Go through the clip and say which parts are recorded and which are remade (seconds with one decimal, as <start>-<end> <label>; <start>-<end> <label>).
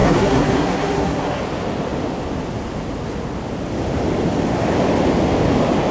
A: 0.0-1.4 remade; 1.4-5.9 recorded